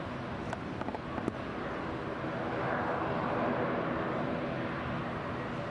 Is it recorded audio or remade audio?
recorded